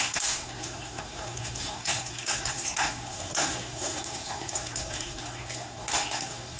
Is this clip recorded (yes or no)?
no